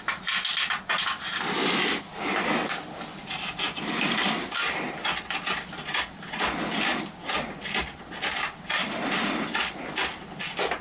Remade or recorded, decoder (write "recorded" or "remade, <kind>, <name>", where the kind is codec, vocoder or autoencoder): recorded